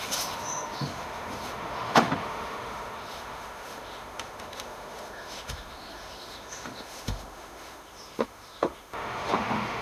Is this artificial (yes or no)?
yes